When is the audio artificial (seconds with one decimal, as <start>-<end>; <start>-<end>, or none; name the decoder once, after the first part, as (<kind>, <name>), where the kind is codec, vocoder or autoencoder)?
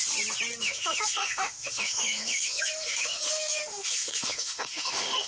0.6-5.3 (autoencoder, DAC-VAE)